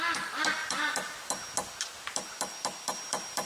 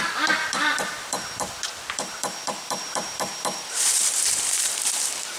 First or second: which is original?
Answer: first